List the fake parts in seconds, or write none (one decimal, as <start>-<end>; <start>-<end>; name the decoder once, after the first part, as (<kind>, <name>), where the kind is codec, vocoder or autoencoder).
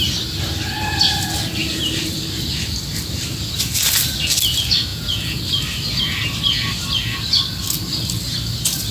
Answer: 4.9-5.4 (vocoder, Vocos)